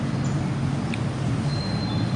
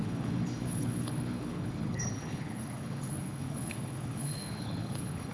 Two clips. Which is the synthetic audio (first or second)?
second